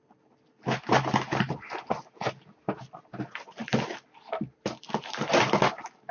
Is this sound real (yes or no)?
yes